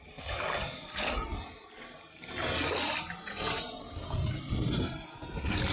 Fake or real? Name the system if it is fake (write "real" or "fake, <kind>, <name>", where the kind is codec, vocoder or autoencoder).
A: real